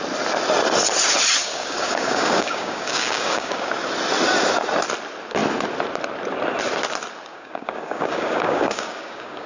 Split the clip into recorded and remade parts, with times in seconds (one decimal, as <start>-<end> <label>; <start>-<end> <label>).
0.0-1.4 recorded; 1.4-3.7 remade; 3.7-7.3 recorded; 7.3-9.5 remade